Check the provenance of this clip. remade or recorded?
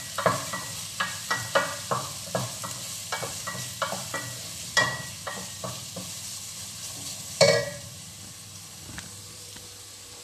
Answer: remade